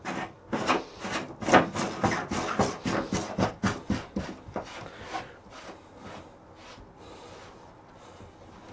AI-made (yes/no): no